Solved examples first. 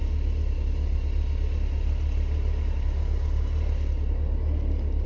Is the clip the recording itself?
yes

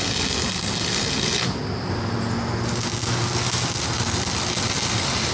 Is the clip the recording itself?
yes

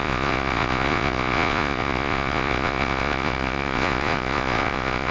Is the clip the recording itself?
no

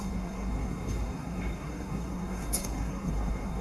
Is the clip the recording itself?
no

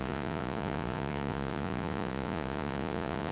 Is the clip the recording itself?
no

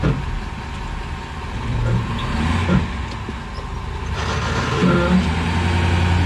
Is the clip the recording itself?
yes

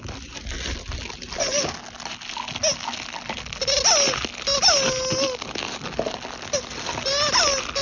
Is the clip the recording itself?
yes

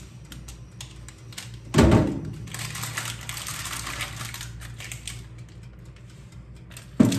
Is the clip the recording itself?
yes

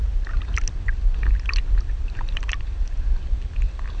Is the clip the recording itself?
yes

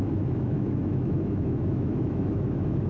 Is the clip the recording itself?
no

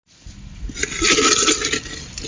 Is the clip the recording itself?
yes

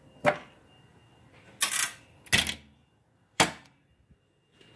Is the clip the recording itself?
yes